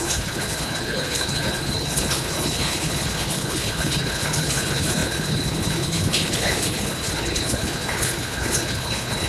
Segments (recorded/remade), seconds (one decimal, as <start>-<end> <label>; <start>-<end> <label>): 0.0-9.3 remade